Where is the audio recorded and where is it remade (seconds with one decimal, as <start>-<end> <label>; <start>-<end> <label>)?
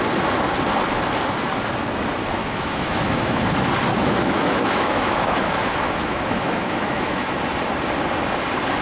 0.0-2.4 recorded; 2.4-3.4 remade; 3.4-3.9 recorded; 3.9-7.3 remade; 7.3-8.8 recorded